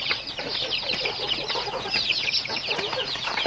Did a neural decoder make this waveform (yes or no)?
yes